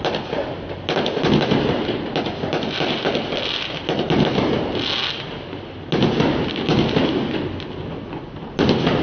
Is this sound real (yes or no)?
yes